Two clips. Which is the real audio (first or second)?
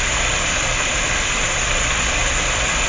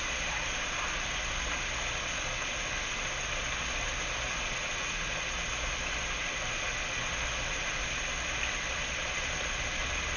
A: second